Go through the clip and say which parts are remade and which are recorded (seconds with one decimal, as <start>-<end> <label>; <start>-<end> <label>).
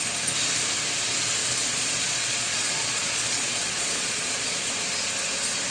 0.0-1.4 recorded; 1.4-4.7 remade; 4.7-5.7 recorded